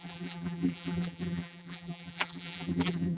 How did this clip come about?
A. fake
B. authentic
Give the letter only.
A